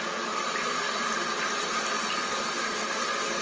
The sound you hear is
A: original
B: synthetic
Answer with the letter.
A